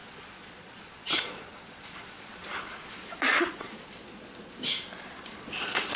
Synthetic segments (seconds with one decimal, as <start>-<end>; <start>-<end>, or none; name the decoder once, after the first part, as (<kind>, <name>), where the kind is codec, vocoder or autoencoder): 0.0-4.0 (vocoder, Vocos); 5.0-6.0